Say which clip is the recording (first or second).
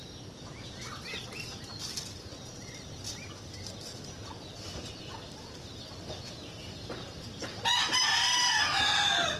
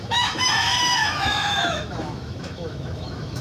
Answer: first